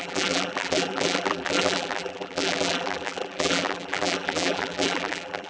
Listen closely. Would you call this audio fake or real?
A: fake